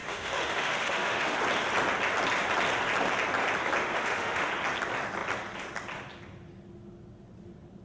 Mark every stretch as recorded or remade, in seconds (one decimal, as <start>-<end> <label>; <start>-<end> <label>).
0.0-1.4 remade; 1.4-3.8 recorded; 3.8-4.5 remade; 4.5-7.8 recorded